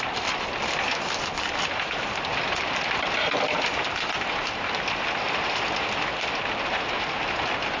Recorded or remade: recorded